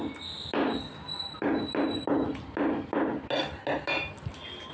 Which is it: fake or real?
real